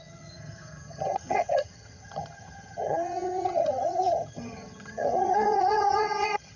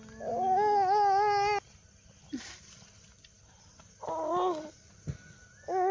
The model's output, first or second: first